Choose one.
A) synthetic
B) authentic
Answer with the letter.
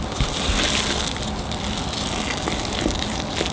B